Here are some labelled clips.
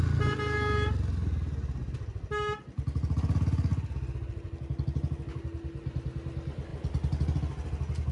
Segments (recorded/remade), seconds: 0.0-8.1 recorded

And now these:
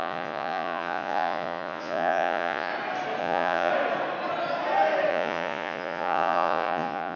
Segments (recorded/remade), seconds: 0.0-2.7 remade; 2.7-3.2 recorded; 3.2-3.7 remade; 3.7-5.1 recorded; 5.1-7.2 remade

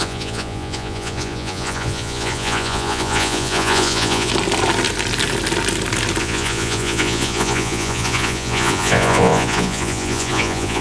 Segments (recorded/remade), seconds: 0.0-4.3 remade; 4.3-6.2 recorded; 6.2-10.8 remade

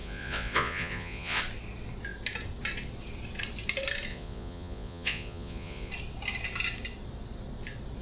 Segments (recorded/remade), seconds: 0.0-1.4 remade; 1.4-4.1 recorded; 4.1-5.9 remade; 5.9-8.0 recorded

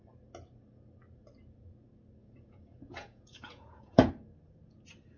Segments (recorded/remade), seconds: 0.0-2.2 recorded; 2.2-4.1 remade; 4.1-5.2 recorded